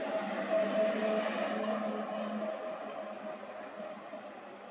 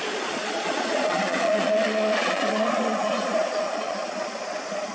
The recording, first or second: first